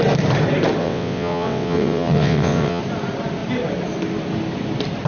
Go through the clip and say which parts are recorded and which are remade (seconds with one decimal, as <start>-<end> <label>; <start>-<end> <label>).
0.0-0.8 recorded; 0.8-2.8 remade; 2.8-5.1 recorded